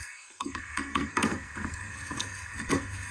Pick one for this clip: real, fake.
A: fake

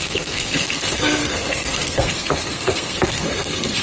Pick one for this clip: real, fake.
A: fake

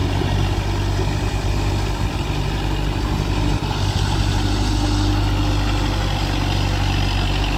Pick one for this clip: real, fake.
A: real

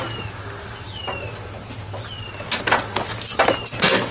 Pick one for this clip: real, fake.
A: real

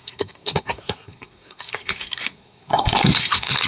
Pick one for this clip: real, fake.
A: fake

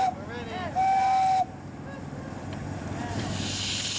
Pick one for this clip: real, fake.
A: real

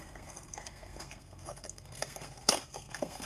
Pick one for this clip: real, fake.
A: fake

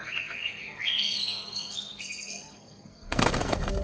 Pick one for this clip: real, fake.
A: fake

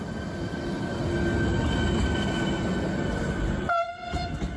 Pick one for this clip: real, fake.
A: real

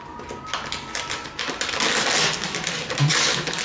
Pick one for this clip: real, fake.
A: real